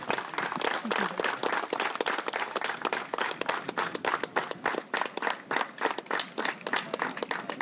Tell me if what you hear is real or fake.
real